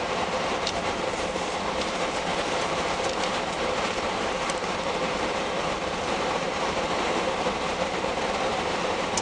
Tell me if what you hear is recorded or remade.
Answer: remade